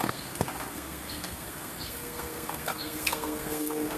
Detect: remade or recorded remade